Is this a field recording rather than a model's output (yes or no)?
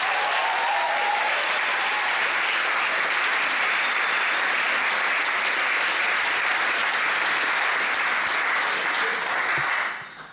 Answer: yes